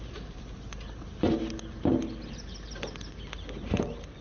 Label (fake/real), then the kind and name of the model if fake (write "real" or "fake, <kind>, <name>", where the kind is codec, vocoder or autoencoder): real